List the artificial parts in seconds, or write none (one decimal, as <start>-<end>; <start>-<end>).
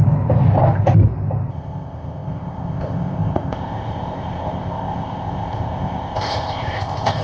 1.5-7.2